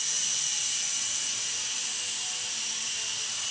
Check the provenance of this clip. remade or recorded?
recorded